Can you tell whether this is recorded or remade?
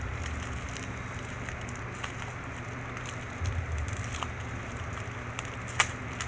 recorded